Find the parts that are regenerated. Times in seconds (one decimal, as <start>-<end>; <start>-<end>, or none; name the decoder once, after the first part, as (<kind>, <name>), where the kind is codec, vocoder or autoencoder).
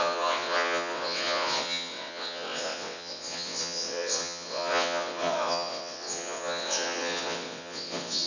0.0-8.3 (vocoder, WaveNeXt)